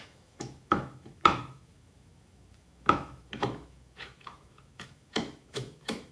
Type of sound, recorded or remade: remade